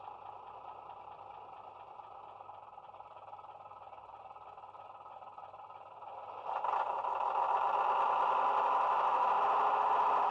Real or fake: real